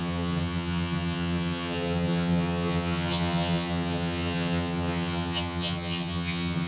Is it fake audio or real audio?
fake